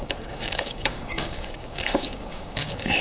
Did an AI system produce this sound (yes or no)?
yes